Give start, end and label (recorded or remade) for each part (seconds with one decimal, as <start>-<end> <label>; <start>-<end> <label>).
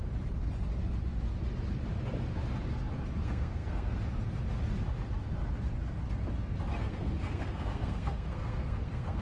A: 0.0-3.2 recorded; 3.2-4.0 remade; 4.0-6.8 recorded; 6.8-9.2 remade